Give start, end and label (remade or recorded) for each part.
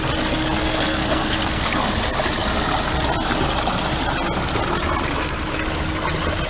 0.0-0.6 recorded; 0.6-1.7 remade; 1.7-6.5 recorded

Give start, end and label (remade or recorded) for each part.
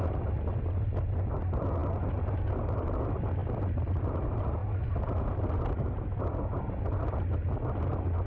0.0-3.4 recorded; 3.4-4.0 remade; 4.0-8.3 recorded